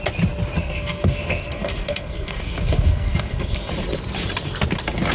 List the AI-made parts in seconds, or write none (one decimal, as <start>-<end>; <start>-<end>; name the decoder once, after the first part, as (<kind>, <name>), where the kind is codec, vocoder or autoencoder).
0.6-3.7 (codec, SNAC)